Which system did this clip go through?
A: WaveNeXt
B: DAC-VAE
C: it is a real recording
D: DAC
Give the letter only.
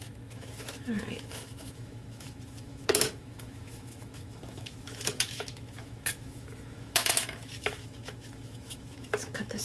B